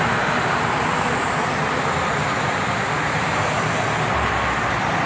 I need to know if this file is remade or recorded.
recorded